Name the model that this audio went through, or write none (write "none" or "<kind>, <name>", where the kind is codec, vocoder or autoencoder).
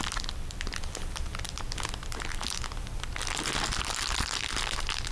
none